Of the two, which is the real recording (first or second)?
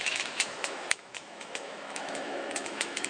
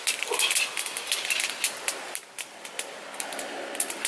second